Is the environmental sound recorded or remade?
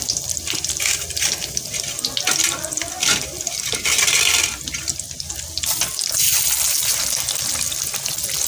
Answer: recorded